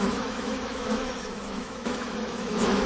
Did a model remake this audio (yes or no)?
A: yes